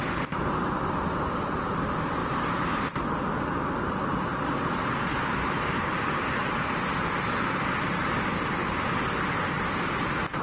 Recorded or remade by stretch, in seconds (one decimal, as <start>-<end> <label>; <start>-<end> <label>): 0.0-2.2 recorded; 2.2-2.8 remade; 2.8-4.3 recorded; 4.3-6.5 remade; 6.5-10.4 recorded